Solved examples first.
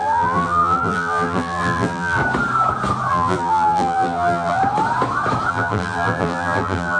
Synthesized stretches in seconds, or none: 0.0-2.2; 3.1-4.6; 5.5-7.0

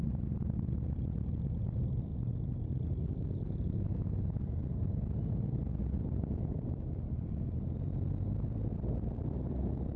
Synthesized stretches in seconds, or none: 0.0-2.1; 2.7-4.6; 5.8-10.0

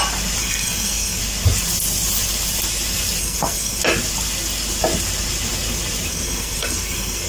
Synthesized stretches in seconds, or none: 0.4-1.2; 3.2-3.8; 6.1-7.3

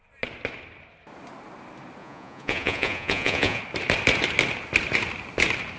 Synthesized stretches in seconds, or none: 2.0-3.6